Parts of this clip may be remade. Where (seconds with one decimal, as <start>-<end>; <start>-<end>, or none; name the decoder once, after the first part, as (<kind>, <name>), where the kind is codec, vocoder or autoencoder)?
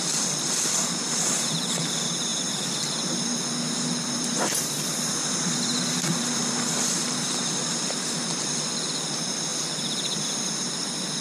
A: 0.0-9.5 (vocoder, BigVGAN v2); 10.4-11.2